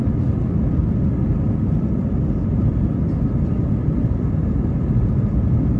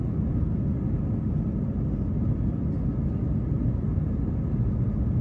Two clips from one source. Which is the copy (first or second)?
first